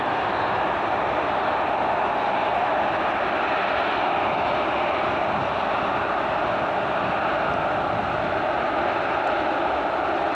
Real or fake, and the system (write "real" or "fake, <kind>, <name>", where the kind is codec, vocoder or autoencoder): real